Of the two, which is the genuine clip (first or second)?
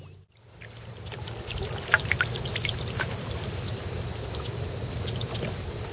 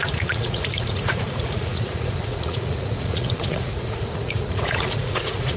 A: first